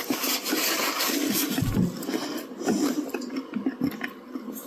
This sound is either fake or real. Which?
real